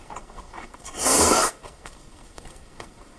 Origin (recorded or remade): remade